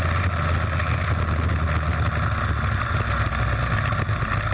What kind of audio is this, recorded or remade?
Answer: recorded